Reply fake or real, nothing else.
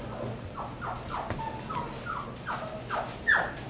real